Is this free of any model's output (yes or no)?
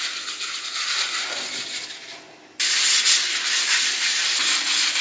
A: yes